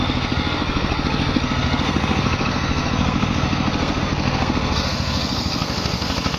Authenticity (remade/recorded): remade